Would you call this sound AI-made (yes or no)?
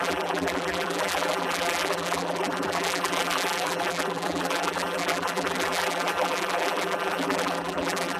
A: yes